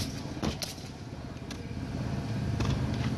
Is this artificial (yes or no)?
no